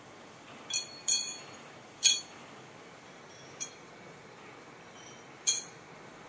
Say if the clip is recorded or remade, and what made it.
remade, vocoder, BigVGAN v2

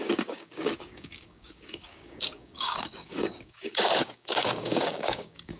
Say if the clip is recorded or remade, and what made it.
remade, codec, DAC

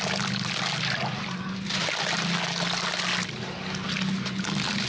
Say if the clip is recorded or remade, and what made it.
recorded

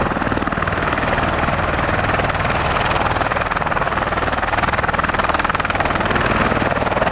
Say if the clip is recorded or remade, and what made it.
recorded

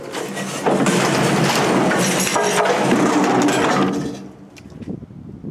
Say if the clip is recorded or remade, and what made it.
recorded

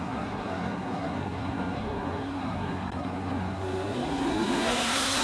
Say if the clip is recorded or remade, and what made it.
remade, codec, SNAC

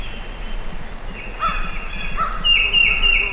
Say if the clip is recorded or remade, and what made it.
recorded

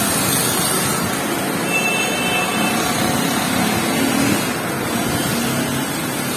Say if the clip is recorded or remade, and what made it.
recorded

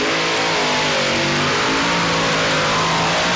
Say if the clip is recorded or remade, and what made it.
recorded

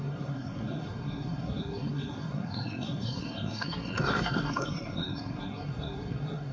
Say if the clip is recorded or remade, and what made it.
remade, codec, SNAC